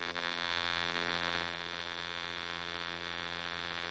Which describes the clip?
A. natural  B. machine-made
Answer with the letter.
B